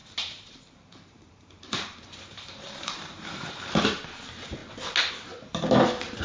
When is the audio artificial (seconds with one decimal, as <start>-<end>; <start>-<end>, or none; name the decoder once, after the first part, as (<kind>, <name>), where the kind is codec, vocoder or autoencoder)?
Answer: 0.0-3.7 (vocoder, BigVGAN v2)